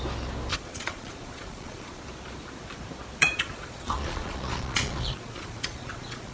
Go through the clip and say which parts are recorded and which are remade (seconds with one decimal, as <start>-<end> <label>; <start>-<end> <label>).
0.0-0.5 recorded; 0.5-2.0 remade; 2.0-3.2 recorded; 3.2-6.3 remade